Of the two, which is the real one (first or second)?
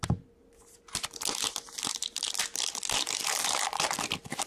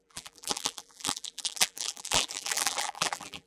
first